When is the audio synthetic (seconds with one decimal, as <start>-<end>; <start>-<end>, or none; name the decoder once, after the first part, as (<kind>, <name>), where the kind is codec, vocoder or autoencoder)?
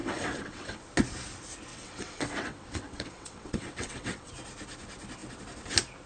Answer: 0.0-0.8 (vocoder, WaveNeXt); 1.7-4.3